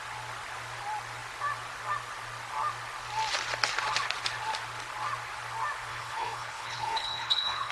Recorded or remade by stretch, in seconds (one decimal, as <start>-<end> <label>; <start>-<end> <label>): 0.0-5.9 recorded; 5.9-7.7 remade

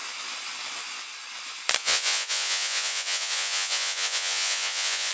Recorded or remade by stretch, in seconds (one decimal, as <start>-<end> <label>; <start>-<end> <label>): 0.0-1.8 recorded; 1.8-5.1 remade

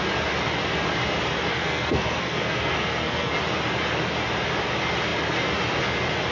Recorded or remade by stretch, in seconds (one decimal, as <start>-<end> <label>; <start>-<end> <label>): 0.0-1.5 recorded; 1.5-3.4 remade; 3.4-6.3 recorded

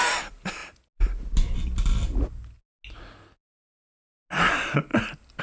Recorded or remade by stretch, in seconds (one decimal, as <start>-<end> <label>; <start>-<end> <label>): 0.0-5.4 recorded

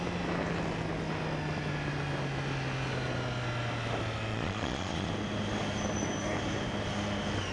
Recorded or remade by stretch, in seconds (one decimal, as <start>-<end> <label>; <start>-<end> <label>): 0.0-4.3 recorded; 4.3-5.1 remade; 5.1-7.5 recorded

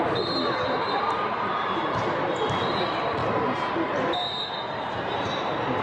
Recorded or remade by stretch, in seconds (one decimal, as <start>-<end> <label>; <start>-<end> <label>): 0.0-5.8 remade

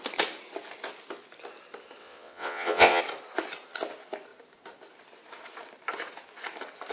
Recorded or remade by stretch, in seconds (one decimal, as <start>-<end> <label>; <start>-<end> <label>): 0.0-2.0 recorded; 2.0-3.0 remade; 3.0-6.9 recorded